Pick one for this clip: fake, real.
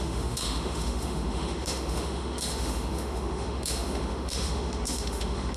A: fake